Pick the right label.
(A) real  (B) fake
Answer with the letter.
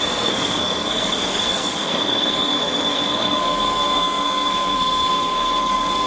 B